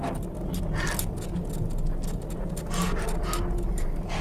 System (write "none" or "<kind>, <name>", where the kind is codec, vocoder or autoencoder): none